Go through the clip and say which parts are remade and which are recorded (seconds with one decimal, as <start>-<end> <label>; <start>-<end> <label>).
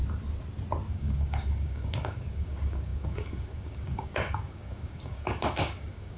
0.0-0.9 recorded; 0.9-6.2 remade